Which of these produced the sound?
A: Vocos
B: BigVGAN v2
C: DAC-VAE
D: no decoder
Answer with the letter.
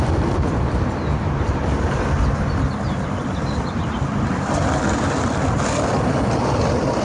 D